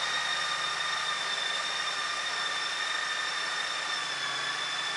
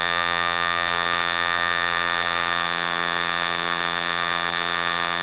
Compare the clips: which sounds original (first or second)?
first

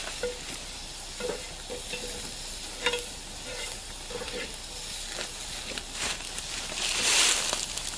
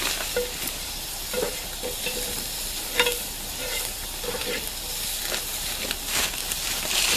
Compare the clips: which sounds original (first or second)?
first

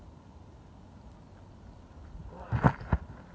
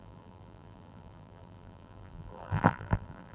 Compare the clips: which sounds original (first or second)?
first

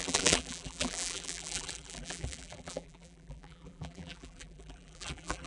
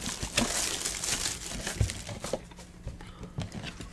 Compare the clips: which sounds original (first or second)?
second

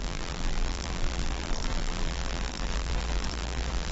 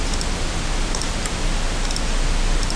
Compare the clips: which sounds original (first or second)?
second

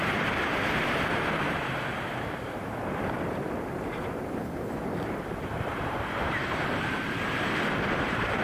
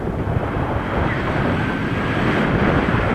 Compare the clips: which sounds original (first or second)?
second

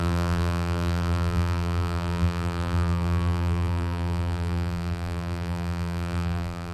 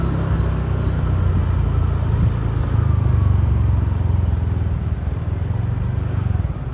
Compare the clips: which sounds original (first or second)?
second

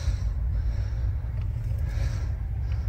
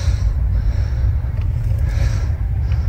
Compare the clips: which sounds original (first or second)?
first